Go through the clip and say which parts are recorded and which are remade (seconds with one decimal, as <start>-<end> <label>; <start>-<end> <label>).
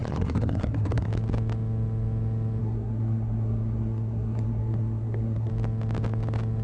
0.0-1.1 remade; 1.1-2.6 recorded; 2.6-5.5 remade; 5.5-6.6 recorded